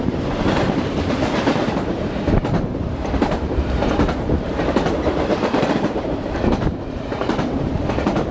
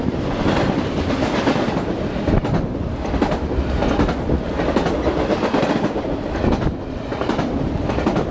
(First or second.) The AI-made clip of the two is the first